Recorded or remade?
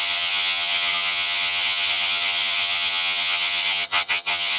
remade